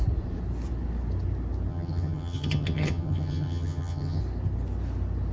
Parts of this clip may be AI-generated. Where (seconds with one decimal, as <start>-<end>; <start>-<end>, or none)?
1.7-4.2